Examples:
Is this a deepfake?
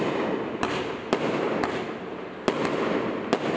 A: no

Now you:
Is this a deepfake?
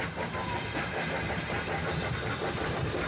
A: no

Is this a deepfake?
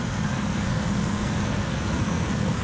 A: yes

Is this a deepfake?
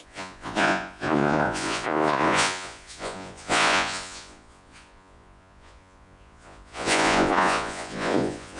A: yes